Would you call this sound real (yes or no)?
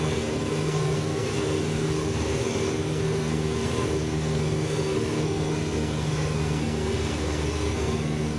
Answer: no